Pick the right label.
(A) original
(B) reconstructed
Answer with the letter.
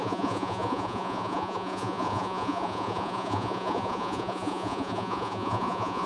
B